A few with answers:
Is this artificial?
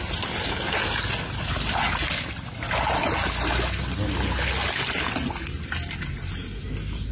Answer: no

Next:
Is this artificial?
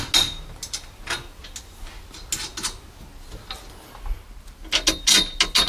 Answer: no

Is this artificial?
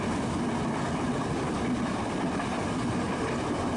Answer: yes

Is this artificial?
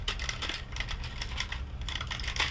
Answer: no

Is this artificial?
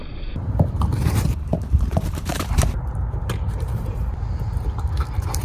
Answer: yes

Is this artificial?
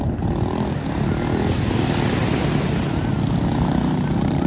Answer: no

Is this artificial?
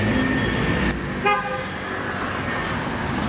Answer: no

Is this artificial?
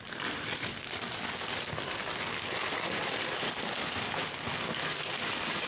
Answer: no